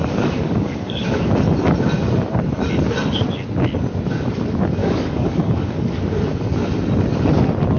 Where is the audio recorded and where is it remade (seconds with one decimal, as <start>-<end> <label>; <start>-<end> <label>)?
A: 0.0-1.2 remade; 1.2-4.8 recorded; 4.8-6.0 remade; 6.0-7.8 recorded